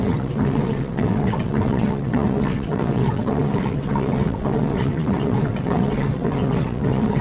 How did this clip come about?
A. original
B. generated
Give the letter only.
B